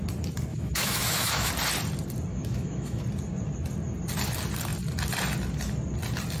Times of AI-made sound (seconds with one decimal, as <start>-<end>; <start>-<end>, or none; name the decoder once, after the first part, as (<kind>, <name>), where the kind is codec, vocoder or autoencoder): 0.5-1.5 (autoencoder, DAC-VAE); 2.3-3.0